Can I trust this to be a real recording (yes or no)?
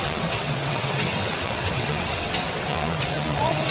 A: no